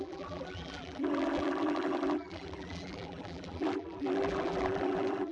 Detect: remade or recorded remade